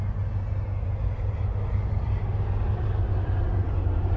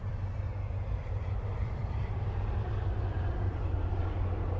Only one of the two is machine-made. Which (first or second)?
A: second